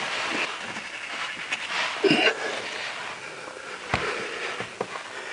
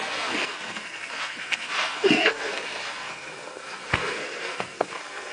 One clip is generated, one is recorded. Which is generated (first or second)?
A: second